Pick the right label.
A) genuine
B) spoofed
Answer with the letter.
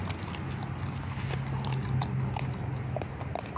A